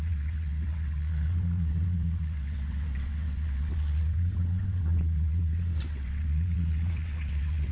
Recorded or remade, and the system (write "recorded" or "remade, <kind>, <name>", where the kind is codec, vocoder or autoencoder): remade, vocoder, WaveNeXt